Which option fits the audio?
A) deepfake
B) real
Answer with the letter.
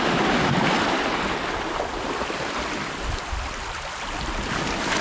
B